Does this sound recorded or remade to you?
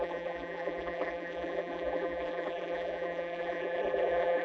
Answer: remade